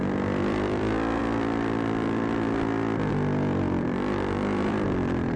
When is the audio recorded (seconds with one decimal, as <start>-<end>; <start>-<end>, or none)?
1.2-3.1